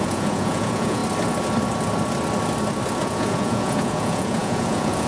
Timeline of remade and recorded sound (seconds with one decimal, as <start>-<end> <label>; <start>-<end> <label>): 0.0-1.0 remade; 1.0-3.0 recorded; 3.0-5.1 remade